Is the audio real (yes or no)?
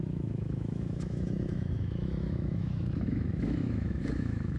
no